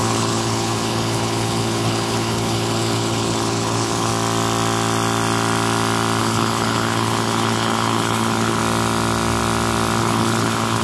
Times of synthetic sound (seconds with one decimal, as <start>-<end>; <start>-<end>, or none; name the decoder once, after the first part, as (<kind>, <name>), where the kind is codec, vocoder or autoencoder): 0.0-4.1 (codec, HILCodec); 6.2-8.6; 10.0-10.8